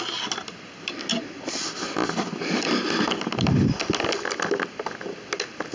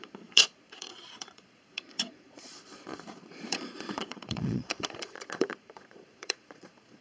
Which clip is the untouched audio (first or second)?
first